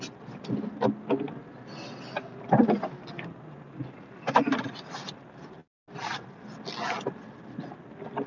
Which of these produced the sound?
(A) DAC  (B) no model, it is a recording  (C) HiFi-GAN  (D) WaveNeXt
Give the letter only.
B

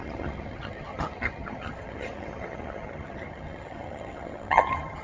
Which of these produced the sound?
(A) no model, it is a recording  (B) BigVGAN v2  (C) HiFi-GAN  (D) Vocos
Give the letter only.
C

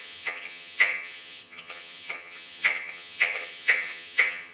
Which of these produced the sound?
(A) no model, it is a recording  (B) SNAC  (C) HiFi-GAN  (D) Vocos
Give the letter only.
C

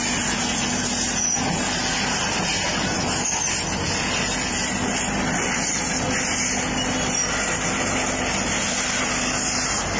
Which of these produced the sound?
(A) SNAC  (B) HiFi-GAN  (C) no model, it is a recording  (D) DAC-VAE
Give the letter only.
C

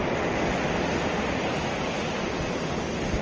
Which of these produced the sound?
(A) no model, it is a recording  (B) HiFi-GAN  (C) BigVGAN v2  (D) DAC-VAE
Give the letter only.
A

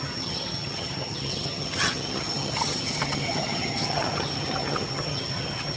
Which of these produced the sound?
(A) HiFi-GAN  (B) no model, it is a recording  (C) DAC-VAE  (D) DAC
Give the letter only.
A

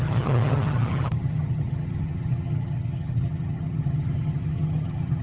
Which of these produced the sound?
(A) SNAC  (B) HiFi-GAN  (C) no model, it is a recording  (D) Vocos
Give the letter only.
B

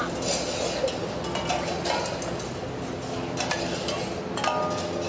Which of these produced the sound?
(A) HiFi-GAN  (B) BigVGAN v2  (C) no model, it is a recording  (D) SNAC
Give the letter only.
C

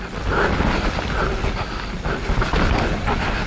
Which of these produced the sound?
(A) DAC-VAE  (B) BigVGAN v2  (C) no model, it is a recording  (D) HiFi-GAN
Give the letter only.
C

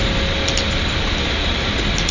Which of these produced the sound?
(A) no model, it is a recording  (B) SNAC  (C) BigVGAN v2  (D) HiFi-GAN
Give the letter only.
A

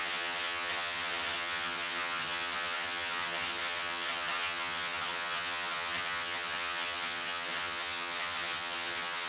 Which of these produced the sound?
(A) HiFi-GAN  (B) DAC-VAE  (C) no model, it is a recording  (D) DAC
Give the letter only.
A